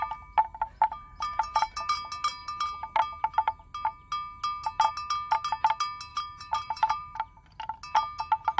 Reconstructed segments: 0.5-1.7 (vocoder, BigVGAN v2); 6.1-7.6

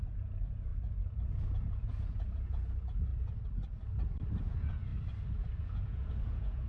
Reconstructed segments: 0.0-3.1 (vocoder, Vocos); 4.4-4.9; 5.6-6.7

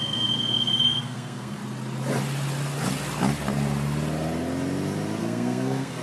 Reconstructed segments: 0.0-1.6 (codec, SNAC); 5.2-6.0

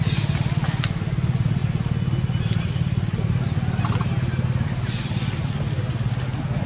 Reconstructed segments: none

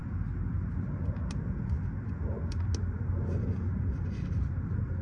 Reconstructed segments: none

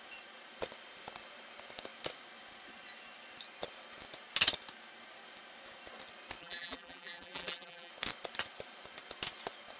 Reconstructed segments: 6.4-7.9 (vocoder, BigVGAN v2)

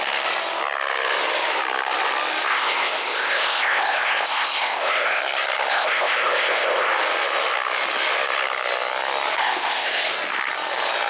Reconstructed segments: 2.5-5.2 (codec, ZipCodec); 5.7-6.9; 9.4-10.1

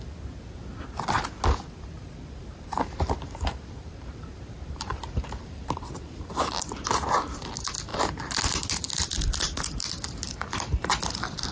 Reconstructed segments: 2.0-6.7 (vocoder, BigVGAN v2)